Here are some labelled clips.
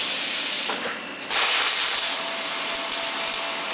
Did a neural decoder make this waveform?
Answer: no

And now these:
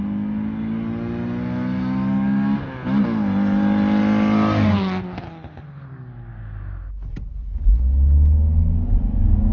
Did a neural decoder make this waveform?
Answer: no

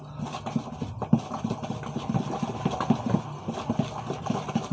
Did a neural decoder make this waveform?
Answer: no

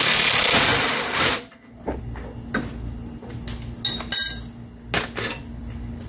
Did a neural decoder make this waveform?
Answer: no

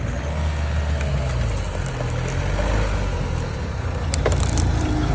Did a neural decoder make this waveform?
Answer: no